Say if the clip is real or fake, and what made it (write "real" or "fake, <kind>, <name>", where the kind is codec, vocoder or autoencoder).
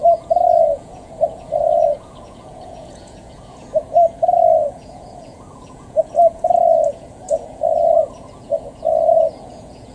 fake, vocoder, Vocos